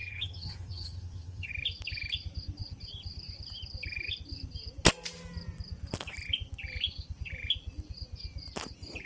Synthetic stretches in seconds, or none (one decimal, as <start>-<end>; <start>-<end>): 0.0-1.5